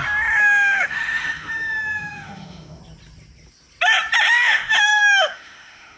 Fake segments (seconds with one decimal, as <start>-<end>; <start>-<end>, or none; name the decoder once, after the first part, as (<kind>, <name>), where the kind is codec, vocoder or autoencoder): 0.4-2.8 (autoencoder, DAC-VAE); 4.3-6.0